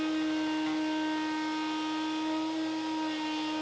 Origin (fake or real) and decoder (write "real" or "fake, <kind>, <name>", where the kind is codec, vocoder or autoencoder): real